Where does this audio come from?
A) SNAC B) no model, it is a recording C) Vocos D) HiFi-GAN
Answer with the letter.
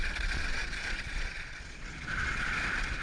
C